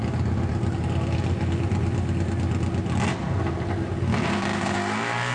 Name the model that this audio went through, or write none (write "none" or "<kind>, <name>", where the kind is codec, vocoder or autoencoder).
none